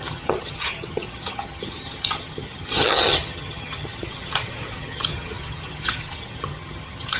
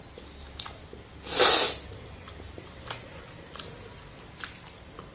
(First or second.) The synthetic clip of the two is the first